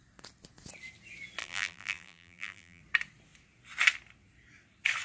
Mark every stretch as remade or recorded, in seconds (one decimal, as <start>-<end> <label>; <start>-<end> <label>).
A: 0.0-1.4 recorded; 1.4-2.8 remade; 2.8-5.0 recorded